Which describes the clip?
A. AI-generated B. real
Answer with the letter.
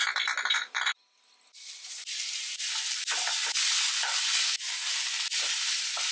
B